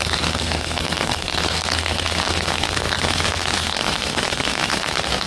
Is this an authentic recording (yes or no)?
no